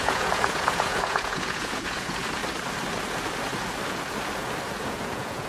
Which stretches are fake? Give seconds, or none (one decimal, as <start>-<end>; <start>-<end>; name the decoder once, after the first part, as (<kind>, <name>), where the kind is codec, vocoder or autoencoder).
0.0-2.4 (vocoder, Vocos); 4.8-5.5